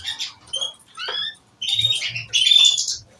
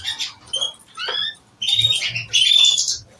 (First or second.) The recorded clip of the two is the second